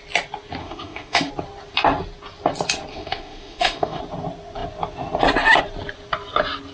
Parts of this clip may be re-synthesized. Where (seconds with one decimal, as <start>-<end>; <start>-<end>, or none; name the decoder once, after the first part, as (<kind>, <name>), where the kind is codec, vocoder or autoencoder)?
0.6-1.3 (autoencoder, DAC-VAE); 2.9-4.0